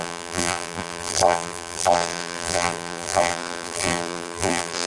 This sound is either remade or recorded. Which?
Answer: remade